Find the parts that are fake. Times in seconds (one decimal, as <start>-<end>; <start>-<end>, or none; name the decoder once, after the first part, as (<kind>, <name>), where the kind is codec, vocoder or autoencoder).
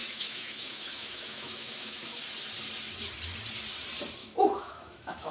0.0-2.2 (autoencoder, DAC-VAE); 4.2-5.3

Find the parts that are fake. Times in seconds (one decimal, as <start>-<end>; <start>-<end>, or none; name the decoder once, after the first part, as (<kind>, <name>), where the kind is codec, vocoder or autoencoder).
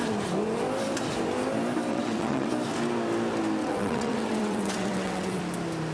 1.9-2.5 (vocoder, WaveNeXt); 3.6-5.4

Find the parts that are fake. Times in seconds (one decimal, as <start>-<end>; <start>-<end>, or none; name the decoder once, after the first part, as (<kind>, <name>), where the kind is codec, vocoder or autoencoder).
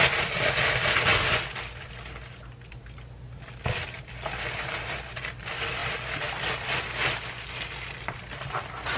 none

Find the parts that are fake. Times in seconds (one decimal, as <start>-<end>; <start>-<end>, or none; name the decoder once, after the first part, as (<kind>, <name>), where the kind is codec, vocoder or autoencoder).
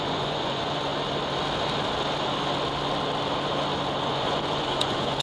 0.0-0.9 (vocoder, Vocos); 4.0-5.2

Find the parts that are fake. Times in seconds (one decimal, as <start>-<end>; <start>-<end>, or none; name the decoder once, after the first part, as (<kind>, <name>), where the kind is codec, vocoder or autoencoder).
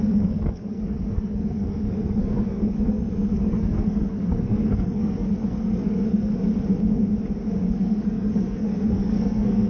0.0-6.3 (codec, SNAC); 7.7-9.7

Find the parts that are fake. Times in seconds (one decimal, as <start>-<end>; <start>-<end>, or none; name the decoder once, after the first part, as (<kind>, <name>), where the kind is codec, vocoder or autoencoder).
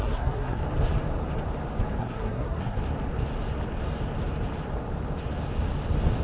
0.0-0.6 (codec, SNAC); 2.0-2.8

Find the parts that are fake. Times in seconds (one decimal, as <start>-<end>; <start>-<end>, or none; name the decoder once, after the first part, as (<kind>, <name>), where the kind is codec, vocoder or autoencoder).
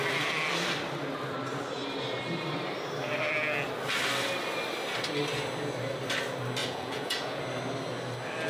6.6-7.4 (vocoder, Vocos)